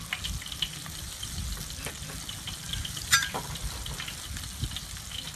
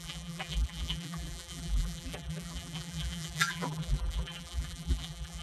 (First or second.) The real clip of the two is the first